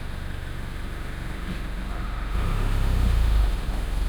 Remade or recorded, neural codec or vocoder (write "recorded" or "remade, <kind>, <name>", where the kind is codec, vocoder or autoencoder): remade, autoencoder, DAC-VAE